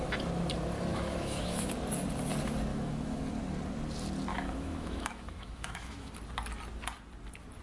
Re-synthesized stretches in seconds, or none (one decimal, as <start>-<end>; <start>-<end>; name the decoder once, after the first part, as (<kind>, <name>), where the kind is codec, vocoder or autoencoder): 0.9-1.7 (autoencoder, DAC-VAE); 2.7-3.3; 4.3-6.1